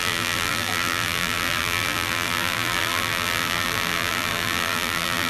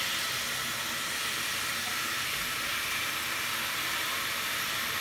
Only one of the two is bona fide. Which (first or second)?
second